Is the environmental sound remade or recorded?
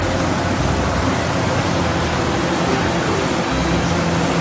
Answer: recorded